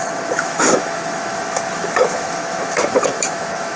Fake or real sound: fake